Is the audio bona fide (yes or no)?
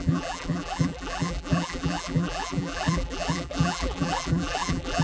no